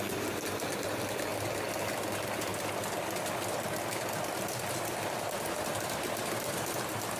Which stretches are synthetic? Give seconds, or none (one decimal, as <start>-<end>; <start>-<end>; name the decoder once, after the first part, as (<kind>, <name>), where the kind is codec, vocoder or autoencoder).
none

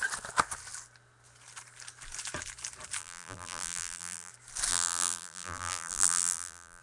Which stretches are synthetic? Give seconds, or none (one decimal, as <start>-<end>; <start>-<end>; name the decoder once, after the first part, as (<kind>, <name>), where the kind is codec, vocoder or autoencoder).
3.0-4.3 (vocoder, BigVGAN v2); 4.7-6.8

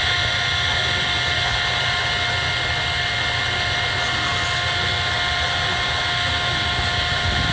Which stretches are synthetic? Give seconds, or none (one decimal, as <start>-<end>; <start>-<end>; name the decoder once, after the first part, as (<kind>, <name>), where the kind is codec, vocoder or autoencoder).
none

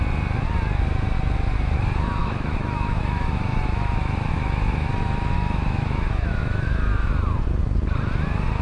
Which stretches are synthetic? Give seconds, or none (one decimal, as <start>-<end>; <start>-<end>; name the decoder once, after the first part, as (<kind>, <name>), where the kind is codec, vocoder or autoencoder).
2.2-7.1 (autoencoder, DAC-VAE)

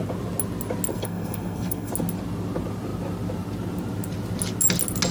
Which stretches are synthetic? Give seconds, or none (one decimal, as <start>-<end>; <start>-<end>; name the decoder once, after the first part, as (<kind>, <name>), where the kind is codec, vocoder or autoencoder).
0.9-1.9 (codec, SNAC)

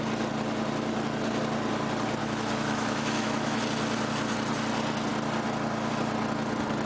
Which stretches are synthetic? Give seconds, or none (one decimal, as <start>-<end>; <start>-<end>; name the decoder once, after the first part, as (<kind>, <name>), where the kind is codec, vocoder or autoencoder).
2.2-3.6 (autoencoder, DAC-VAE)

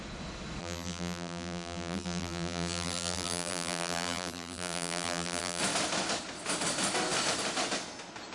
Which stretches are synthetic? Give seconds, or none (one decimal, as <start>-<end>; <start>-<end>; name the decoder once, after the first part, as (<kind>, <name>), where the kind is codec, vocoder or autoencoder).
0.6-5.6 (vocoder, BigVGAN v2)